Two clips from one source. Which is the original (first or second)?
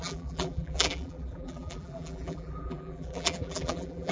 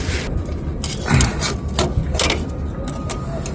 second